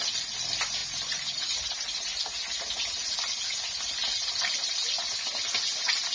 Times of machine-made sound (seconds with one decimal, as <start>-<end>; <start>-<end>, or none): 0.8-2.1